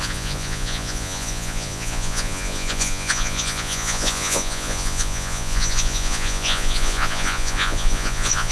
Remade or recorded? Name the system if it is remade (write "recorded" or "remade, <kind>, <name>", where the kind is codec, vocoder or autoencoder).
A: remade, vocoder, Vocos